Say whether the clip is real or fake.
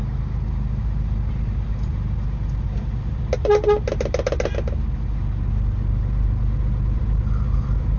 real